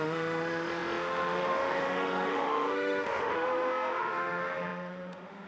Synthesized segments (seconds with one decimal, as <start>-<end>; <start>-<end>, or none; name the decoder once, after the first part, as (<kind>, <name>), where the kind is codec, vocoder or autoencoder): 0.0-5.5 (autoencoder, DAC-VAE)